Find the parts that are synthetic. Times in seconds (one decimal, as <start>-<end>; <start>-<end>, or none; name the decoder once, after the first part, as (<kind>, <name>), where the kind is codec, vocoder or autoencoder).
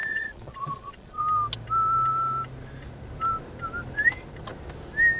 0.0-1.2 (vocoder, Vocos)